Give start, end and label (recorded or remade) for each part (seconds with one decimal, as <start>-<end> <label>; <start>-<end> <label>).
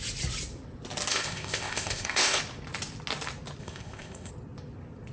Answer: 0.0-1.1 recorded; 1.1-2.4 remade; 2.4-3.6 recorded; 3.6-4.3 remade; 4.3-5.1 recorded